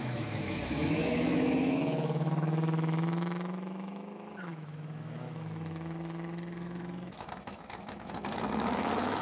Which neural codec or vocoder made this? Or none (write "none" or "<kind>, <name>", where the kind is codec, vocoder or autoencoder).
autoencoder, DAC-VAE